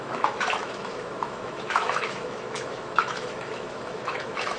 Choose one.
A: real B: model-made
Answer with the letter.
B